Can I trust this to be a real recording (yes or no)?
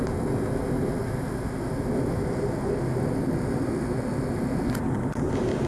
yes